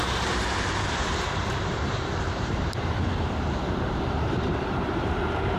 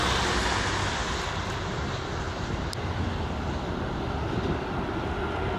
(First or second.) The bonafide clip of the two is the second